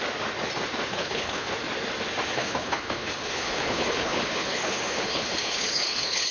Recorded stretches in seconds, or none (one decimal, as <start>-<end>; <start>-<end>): 0.0-0.9; 1.5-2.3